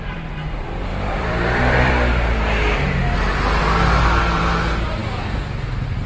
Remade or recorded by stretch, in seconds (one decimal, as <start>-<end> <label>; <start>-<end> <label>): 0.0-0.9 recorded; 0.9-1.9 remade; 1.9-6.1 recorded